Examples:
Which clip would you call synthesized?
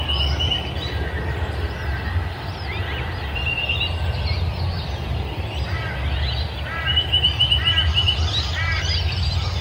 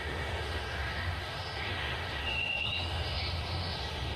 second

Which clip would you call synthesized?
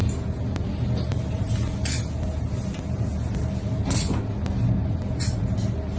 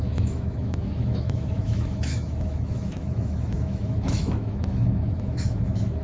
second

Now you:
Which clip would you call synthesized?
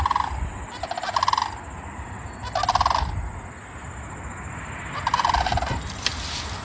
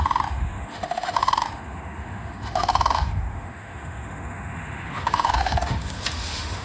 second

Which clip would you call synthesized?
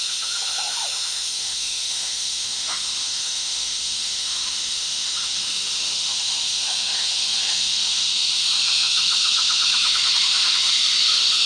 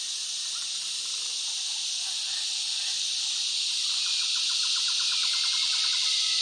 first